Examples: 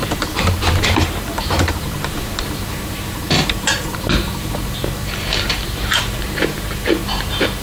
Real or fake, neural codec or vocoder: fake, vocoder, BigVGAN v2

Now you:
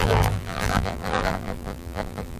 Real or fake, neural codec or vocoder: fake, vocoder, BigVGAN v2